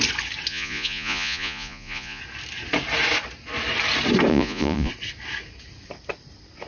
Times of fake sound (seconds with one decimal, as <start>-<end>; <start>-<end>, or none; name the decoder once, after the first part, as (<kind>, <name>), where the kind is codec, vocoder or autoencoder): 0.5-2.2 (vocoder, Vocos); 4.3-4.9